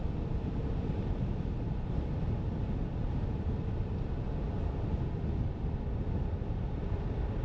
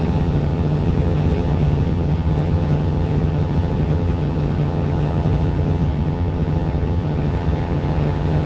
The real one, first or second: first